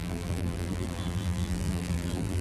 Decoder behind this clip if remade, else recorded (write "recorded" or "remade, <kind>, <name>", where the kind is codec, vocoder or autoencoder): remade, vocoder, BigVGAN v2